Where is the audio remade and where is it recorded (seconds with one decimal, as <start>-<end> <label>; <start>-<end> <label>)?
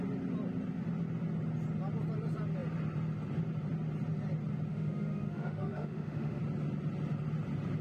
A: 0.0-4.7 recorded; 4.7-6.4 remade; 6.4-7.8 recorded